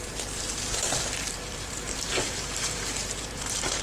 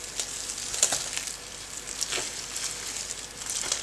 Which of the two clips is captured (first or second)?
second